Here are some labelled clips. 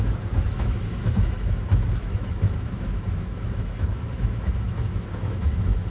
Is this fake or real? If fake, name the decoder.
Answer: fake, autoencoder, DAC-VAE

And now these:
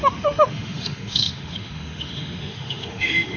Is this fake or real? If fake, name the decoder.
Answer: fake, autoencoder, DAC-VAE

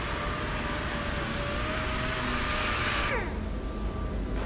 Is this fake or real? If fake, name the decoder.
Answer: real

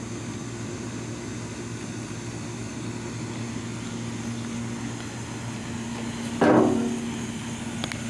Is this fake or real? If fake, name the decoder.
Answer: real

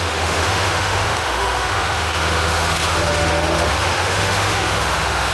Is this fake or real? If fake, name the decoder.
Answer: fake, autoencoder, DAC-VAE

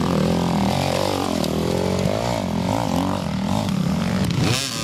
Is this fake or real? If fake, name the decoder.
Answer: real